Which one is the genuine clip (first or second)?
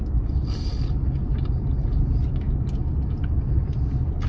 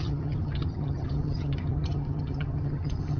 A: first